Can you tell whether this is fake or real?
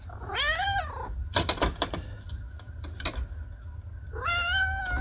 real